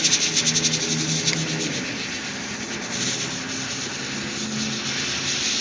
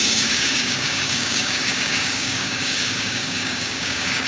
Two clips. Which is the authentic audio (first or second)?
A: first